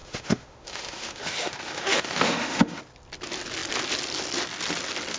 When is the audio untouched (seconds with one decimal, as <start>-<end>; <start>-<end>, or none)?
2.8-5.2